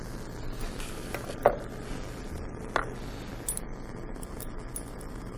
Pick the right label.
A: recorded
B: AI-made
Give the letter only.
A